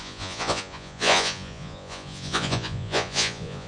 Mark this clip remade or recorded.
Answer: remade